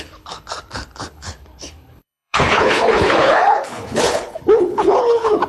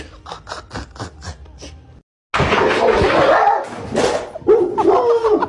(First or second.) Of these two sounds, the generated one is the first